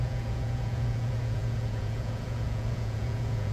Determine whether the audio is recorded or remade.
remade